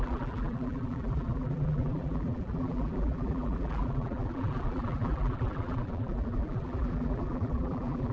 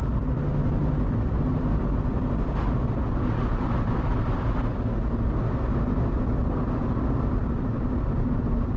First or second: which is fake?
first